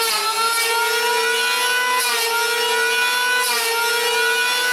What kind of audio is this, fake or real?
real